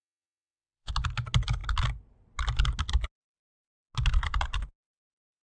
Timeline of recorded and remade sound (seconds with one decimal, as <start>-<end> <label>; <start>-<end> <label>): 0.0-0.9 remade; 0.9-5.5 recorded